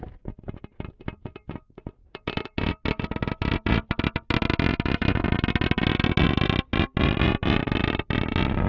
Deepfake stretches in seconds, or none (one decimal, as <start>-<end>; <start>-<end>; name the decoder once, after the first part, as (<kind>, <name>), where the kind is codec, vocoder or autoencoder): none

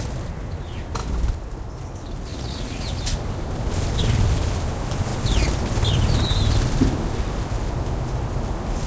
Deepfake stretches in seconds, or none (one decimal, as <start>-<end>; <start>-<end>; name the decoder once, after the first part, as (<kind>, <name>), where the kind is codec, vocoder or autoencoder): 2.3-2.9 (vocoder, Vocos)

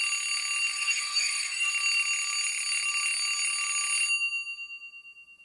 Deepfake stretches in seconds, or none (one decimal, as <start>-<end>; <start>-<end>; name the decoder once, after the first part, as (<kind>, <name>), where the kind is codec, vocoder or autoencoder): 0.7-1.7 (codec, DAC)